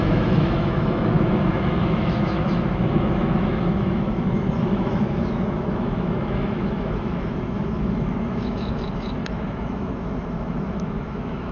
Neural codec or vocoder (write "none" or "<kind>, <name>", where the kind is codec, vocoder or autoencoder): autoencoder, DAC-VAE